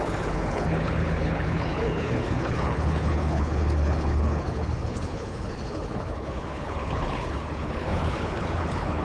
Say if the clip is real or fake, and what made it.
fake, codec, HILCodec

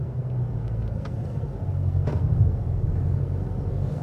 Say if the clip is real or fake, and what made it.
fake, codec, SNAC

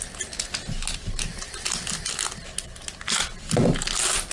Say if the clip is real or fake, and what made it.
real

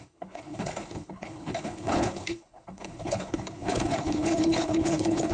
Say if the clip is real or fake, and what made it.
fake, codec, HILCodec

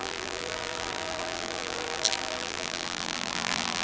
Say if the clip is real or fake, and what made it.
fake, vocoder, BigVGAN v2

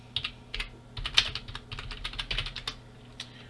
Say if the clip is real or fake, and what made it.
real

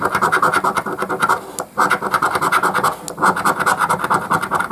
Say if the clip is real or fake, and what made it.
real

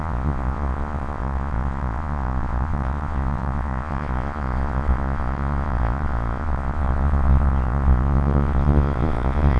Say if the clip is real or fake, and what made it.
fake, vocoder, Vocos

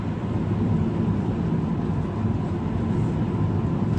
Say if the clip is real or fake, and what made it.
real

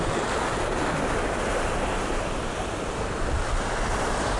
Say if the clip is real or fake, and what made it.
real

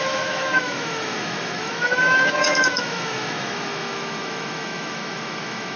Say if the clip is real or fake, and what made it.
fake, autoencoder, DAC-VAE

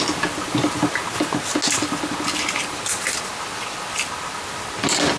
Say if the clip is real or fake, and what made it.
real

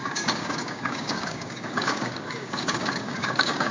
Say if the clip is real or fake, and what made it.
fake, codec, DAC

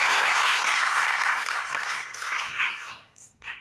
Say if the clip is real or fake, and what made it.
fake, codec, SNAC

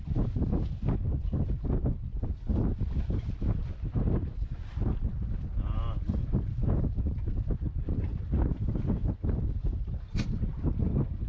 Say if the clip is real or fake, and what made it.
real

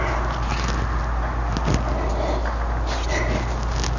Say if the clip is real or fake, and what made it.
real